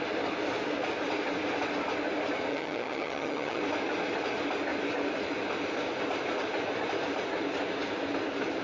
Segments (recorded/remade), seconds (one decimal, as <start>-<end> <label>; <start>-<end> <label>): 0.0-2.5 recorded; 2.5-3.6 remade; 3.6-8.6 recorded